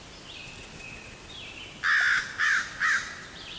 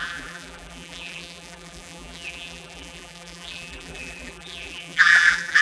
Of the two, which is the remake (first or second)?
second